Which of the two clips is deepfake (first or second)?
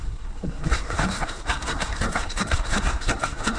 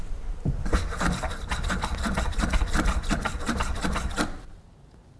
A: first